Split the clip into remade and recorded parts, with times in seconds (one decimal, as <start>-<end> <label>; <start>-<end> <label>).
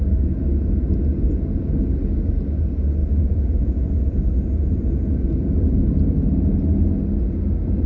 0.0-3.0 recorded; 3.0-5.9 remade; 5.9-7.9 recorded